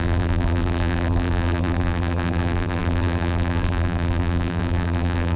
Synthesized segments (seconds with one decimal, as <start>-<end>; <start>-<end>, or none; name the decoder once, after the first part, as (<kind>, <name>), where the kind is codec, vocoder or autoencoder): 0.0-5.4 (vocoder, BigVGAN v2)

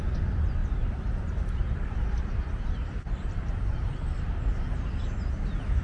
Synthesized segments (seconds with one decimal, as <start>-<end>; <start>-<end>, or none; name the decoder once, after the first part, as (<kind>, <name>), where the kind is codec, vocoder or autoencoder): 0.6-4.1 (vocoder, BigVGAN v2)

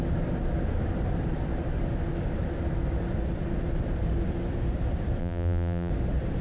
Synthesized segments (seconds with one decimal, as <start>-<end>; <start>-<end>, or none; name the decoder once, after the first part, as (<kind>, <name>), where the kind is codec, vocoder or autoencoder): 5.2-5.9 (vocoder, BigVGAN v2)

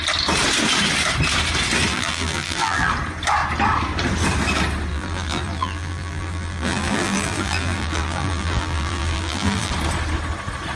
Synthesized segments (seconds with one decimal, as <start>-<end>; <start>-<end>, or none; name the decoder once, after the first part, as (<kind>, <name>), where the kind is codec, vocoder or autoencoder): 1.9-2.9 (vocoder, BigVGAN v2); 4.9-9.7